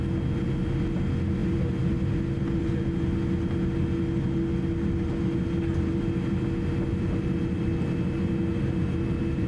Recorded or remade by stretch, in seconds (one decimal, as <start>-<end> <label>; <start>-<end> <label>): 0.0-9.5 recorded